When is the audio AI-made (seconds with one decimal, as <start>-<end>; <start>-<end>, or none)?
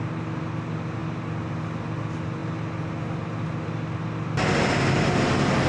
none